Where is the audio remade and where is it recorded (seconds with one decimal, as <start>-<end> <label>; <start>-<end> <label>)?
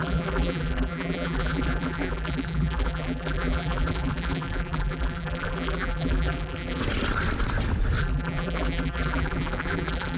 0.0-6.8 remade; 6.8-8.0 recorded; 8.0-10.2 remade